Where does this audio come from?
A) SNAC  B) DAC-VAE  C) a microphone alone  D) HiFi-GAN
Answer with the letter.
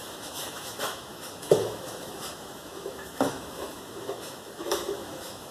B